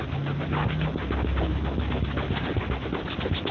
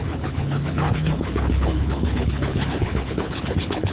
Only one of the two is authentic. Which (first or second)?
first